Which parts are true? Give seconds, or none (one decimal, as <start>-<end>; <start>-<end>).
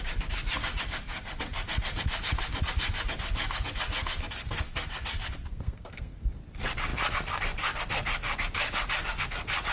0.0-5.5; 6.2-9.7